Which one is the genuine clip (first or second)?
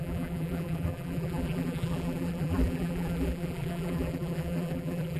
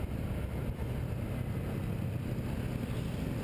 second